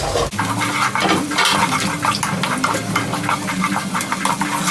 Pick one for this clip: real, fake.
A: real